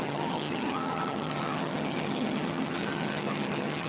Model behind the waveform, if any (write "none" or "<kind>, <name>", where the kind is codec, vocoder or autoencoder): vocoder, HiFi-GAN